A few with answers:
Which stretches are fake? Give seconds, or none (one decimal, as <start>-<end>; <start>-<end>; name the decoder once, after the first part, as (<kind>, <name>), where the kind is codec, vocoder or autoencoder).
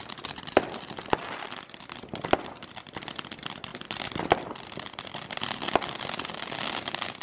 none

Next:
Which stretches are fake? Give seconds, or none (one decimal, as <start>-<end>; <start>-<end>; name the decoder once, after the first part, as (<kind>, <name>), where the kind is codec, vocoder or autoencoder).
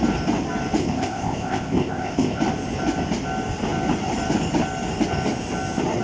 0.8-2.4 (codec, ZipCodec)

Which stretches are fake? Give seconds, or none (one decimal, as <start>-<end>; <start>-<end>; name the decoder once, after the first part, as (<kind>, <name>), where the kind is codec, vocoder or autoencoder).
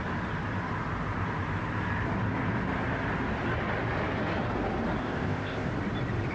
5.0-5.7 (codec, ZipCodec)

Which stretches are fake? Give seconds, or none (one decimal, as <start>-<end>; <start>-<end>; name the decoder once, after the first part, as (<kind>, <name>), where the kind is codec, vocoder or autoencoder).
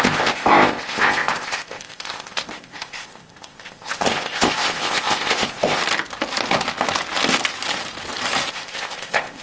0.0-5.8 (codec, ZipCodec); 8.5-9.4